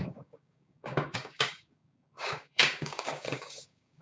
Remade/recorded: remade